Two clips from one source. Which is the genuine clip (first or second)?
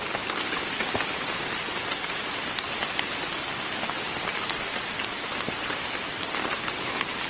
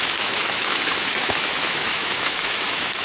first